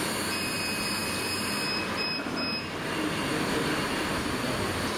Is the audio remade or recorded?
recorded